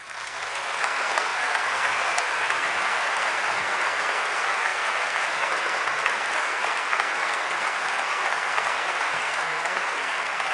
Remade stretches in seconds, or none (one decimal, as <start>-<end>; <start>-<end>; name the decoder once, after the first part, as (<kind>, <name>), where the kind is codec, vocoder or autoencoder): 0.0-10.5 (codec, SNAC)